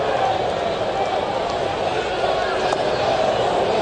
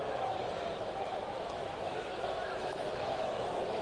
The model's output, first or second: second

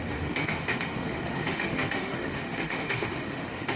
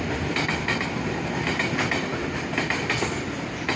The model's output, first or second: first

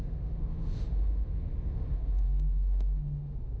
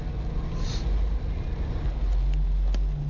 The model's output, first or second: first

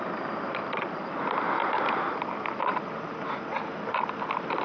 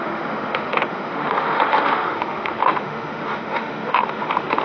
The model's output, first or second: second